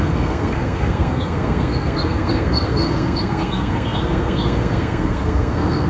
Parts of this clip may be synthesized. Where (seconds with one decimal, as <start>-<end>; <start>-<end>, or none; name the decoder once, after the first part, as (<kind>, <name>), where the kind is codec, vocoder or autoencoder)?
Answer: 0.0-5.9 (codec, SNAC)